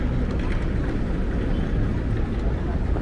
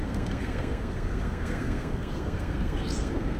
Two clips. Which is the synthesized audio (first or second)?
second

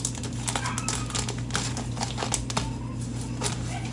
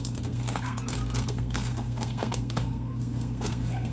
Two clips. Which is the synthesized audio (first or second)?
second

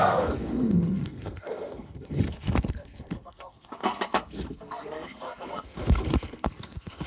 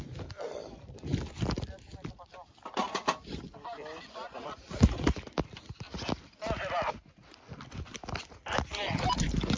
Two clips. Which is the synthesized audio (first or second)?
first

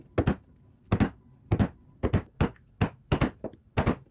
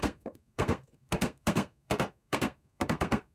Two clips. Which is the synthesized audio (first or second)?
second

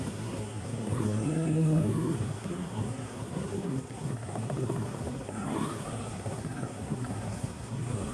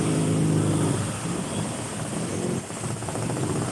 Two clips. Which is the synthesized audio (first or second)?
first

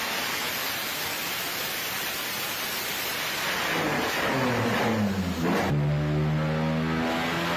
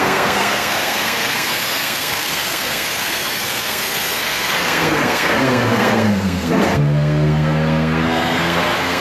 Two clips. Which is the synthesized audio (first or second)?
second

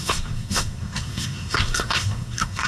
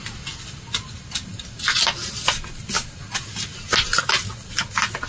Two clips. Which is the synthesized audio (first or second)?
first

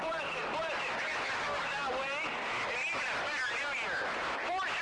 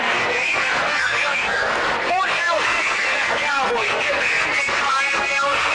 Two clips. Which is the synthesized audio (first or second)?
second